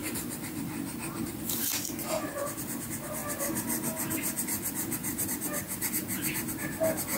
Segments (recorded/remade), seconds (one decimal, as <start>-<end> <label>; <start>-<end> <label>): 0.0-1.3 remade; 1.3-5.0 recorded; 5.0-5.6 remade; 5.6-7.2 recorded